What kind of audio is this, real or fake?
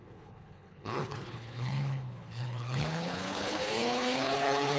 fake